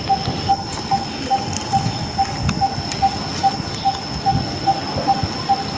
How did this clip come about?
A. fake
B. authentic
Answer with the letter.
B